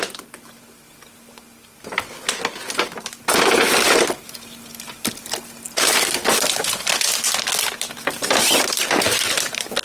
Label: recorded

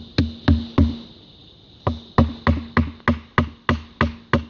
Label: recorded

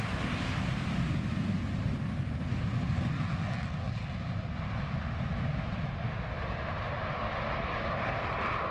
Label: recorded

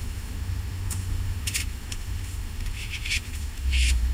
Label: remade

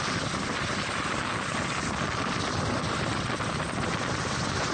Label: recorded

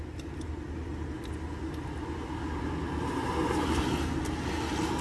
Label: recorded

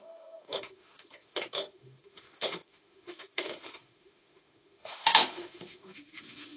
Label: remade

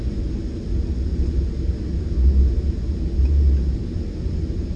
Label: recorded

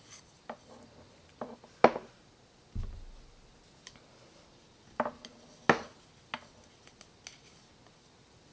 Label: recorded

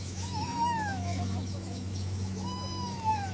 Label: remade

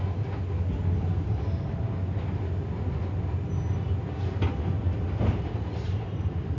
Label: recorded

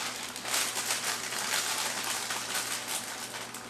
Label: recorded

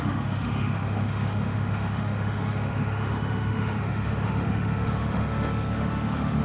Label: remade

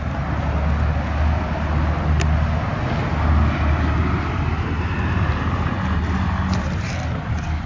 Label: recorded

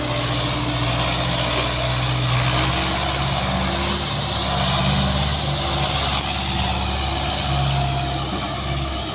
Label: recorded